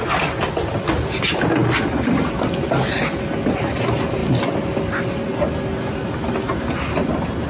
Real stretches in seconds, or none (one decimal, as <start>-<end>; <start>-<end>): 0.0-7.5

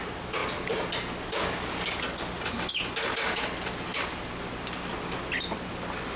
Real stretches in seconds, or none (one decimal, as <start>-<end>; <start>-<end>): 0.0-6.2